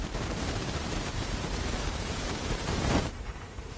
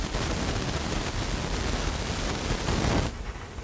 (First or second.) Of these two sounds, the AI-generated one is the first